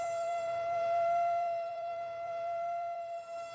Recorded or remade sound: remade